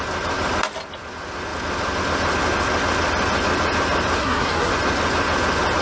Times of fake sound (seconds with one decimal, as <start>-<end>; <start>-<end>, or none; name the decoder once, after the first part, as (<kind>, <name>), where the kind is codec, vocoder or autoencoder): 4.2-4.7 (codec, SNAC)